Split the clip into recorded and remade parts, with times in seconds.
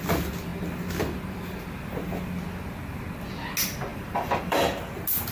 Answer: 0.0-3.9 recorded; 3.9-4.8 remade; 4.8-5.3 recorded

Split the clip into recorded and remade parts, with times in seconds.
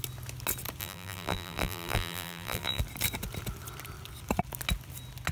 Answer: 0.0-0.8 recorded; 0.8-2.8 remade; 2.8-5.3 recorded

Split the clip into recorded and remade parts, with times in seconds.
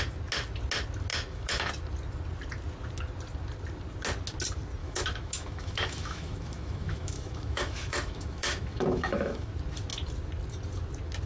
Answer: 0.0-1.1 recorded; 1.1-1.7 remade; 1.7-4.8 recorded; 4.8-9.5 remade; 9.5-11.3 recorded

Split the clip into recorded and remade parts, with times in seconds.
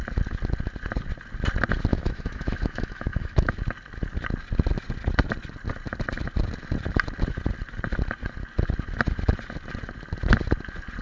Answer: 0.0-1.9 recorded; 1.9-3.5 remade; 3.5-11.0 recorded